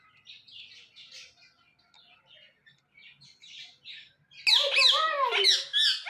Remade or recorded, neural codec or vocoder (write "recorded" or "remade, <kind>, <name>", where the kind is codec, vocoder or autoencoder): recorded